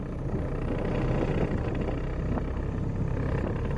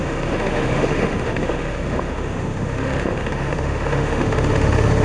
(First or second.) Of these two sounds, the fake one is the second